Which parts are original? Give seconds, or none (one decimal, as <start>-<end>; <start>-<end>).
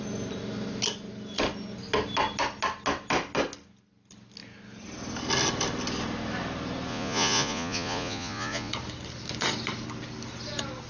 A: 0.0-6.9; 8.7-10.9